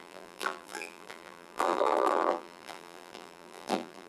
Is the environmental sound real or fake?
fake